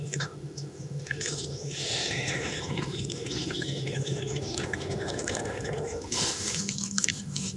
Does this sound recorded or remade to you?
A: remade